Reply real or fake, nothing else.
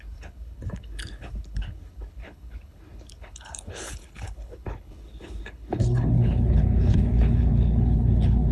fake